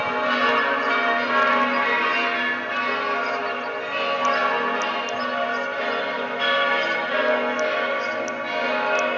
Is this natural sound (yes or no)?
yes